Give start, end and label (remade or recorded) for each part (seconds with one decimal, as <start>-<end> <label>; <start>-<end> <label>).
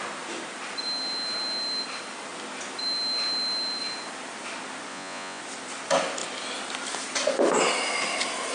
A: 0.0-4.9 recorded; 4.9-5.4 remade; 5.4-8.5 recorded